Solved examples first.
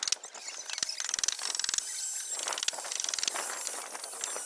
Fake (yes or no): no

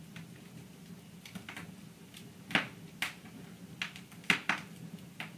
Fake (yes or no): no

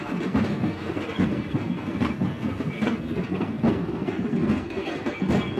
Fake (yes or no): yes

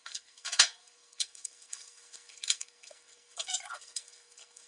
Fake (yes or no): yes